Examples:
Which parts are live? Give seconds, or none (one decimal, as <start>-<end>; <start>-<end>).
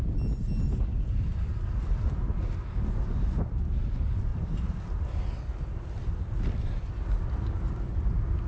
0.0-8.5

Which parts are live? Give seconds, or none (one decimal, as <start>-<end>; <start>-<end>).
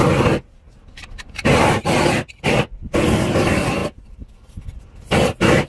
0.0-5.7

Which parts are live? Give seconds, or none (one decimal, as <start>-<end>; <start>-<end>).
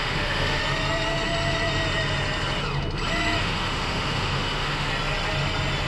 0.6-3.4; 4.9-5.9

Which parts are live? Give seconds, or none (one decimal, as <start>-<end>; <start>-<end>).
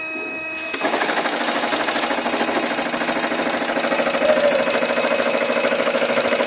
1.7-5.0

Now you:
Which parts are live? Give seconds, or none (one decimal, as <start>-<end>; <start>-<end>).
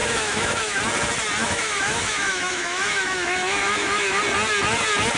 0.8-1.4; 4.2-5.2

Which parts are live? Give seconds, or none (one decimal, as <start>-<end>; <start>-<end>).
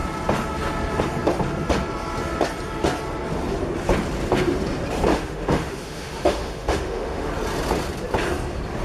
0.0-5.1; 7.3-8.8